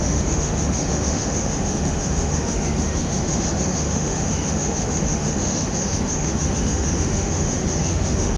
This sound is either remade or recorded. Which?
remade